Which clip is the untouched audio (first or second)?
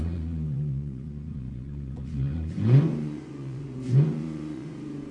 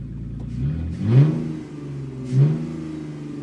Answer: second